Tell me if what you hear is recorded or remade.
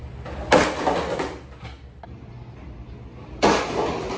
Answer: recorded